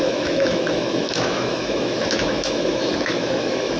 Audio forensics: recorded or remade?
remade